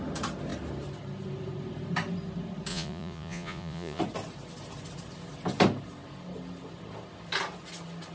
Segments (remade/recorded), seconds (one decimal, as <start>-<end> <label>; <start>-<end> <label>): 0.0-2.7 recorded; 2.7-4.0 remade; 4.0-8.1 recorded